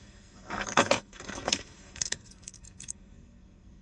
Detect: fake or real fake